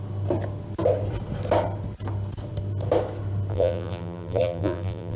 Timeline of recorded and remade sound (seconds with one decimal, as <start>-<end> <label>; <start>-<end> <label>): 0.0-3.5 recorded; 3.5-5.2 remade